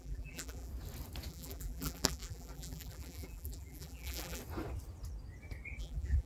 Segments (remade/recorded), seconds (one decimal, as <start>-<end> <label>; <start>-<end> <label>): 0.0-0.7 remade; 0.7-1.3 recorded; 1.3-4.4 remade; 4.4-5.8 recorded; 5.8-6.3 remade